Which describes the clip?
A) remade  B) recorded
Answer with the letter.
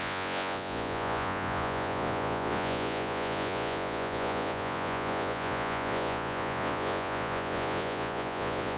A